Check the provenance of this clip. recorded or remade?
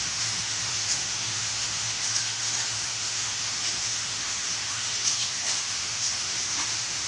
remade